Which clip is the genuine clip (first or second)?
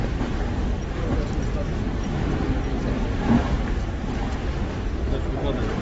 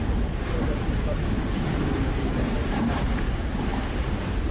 first